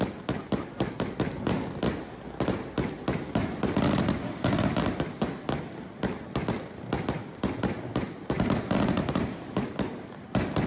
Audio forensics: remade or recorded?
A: recorded